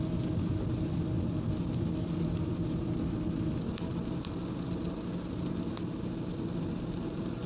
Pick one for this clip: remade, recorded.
recorded